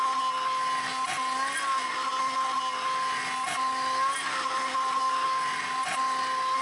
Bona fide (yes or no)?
yes